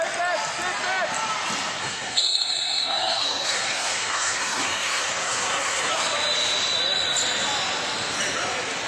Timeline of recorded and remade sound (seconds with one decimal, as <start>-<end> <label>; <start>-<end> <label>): 0.0-1.8 recorded; 1.8-5.9 remade; 5.9-8.9 recorded